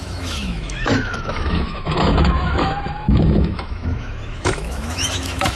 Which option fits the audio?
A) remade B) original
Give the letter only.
A